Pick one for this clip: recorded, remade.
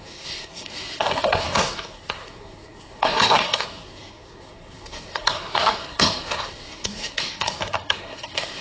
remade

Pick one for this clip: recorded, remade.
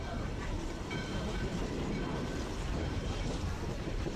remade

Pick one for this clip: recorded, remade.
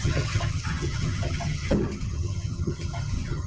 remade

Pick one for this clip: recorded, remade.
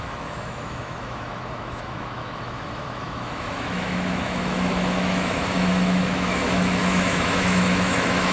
remade